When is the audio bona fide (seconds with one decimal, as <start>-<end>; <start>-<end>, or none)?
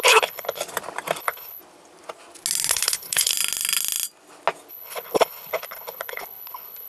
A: 0.6-1.2; 1.6-2.7; 3.3-4.7